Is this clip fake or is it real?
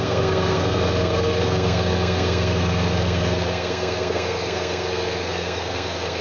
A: fake